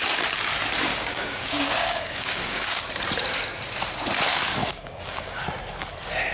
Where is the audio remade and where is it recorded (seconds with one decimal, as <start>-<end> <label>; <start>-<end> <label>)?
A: 0.0-0.9 recorded; 0.9-2.8 remade; 2.8-4.6 recorded; 4.6-5.4 remade; 5.4-6.3 recorded